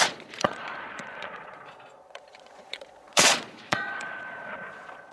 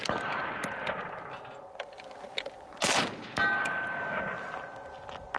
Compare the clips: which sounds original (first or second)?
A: second